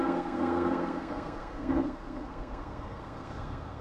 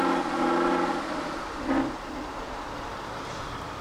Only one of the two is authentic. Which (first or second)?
second